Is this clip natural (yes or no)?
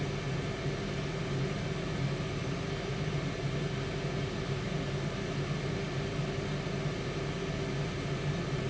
yes